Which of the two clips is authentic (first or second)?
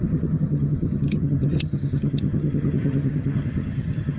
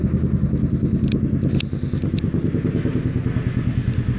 second